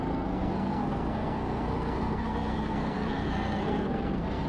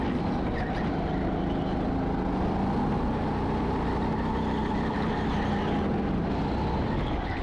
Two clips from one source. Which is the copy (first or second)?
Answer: first